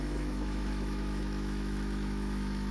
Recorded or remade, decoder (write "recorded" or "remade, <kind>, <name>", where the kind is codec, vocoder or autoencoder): remade, autoencoder, DAC-VAE